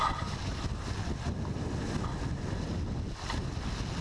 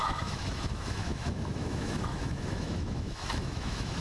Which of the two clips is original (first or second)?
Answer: first